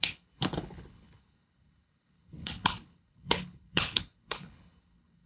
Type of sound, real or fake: fake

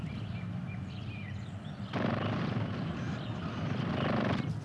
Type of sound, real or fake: real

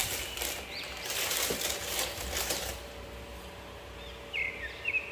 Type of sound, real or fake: real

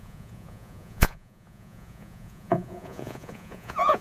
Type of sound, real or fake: fake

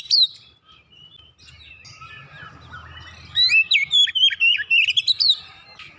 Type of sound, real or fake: real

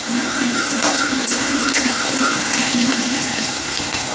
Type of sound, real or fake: fake